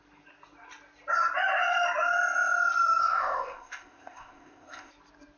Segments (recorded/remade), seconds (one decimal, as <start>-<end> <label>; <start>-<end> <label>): 0.0-3.0 recorded; 3.0-4.9 remade; 4.9-5.4 recorded